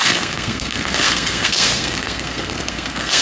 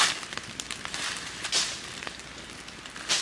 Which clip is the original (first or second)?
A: second